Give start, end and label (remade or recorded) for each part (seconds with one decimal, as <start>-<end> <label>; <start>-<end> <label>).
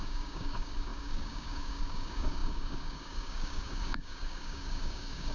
0.0-5.3 remade